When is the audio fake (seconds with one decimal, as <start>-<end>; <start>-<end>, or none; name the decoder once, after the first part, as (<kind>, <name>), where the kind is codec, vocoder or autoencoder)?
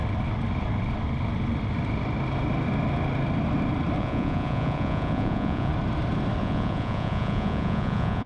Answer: 4.0-5.7 (vocoder, Vocos); 6.4-8.3